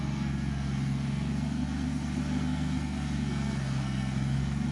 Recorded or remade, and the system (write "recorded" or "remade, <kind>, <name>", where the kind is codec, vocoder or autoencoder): remade, codec, SNAC